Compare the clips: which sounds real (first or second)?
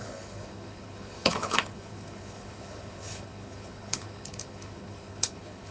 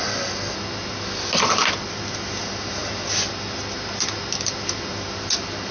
second